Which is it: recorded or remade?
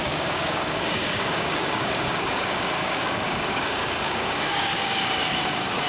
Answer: remade